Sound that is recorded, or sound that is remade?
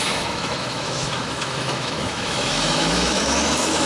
remade